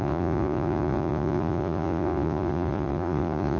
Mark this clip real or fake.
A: fake